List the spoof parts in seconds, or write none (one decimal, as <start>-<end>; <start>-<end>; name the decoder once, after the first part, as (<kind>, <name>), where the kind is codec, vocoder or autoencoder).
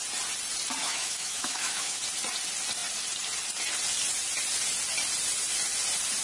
0.8-2.0 (autoencoder, DAC-VAE)